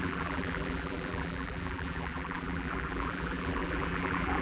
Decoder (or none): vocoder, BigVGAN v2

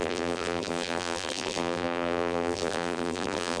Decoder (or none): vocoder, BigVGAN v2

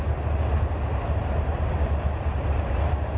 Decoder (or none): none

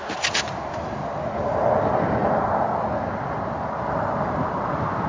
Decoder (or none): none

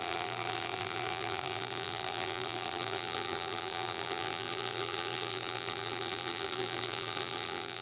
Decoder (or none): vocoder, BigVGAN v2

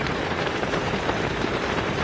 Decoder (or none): vocoder, BigVGAN v2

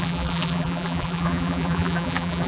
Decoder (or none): vocoder, BigVGAN v2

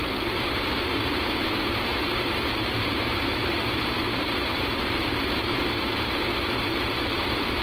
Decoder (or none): vocoder, BigVGAN v2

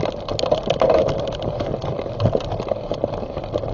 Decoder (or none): none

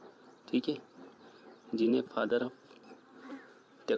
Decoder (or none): vocoder, BigVGAN v2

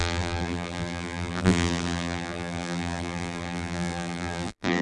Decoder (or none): vocoder, BigVGAN v2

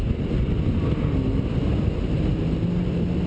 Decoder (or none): none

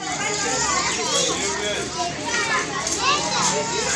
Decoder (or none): none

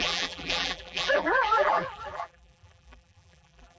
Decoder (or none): vocoder, BigVGAN v2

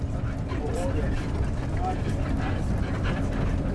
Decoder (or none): none